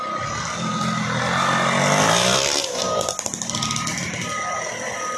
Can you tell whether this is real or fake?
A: real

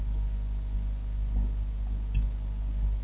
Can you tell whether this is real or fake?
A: real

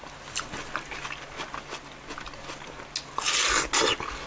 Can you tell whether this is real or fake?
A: real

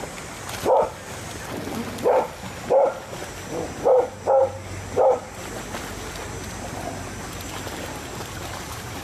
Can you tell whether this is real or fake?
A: real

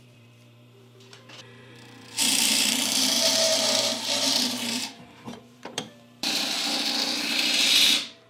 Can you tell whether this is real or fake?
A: fake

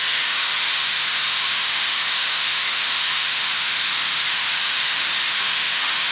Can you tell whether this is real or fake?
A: fake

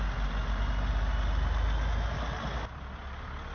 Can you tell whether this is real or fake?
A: real